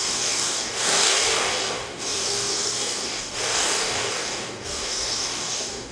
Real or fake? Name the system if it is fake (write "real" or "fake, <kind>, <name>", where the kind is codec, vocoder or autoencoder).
fake, codec, DAC